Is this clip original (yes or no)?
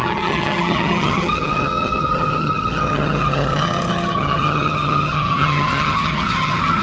no